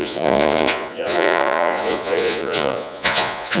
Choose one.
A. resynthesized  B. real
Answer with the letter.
A